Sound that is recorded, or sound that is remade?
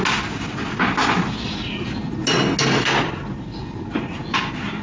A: recorded